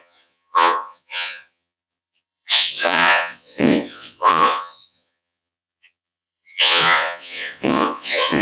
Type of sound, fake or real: fake